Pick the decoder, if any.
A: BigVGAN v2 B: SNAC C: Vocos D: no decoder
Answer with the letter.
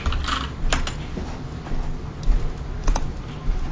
D